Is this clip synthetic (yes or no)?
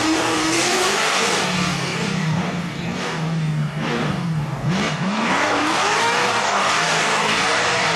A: yes